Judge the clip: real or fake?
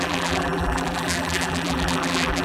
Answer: fake